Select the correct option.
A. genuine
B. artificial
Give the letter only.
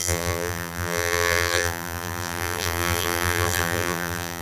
B